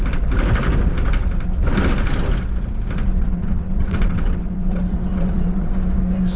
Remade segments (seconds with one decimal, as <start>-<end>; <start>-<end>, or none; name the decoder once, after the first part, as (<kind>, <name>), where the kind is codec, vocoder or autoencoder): 3.1-5.7 (vocoder, WaveNeXt)